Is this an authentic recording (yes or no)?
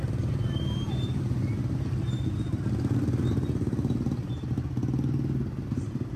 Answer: yes